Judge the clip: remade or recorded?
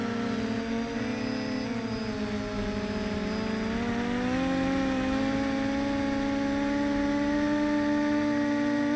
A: recorded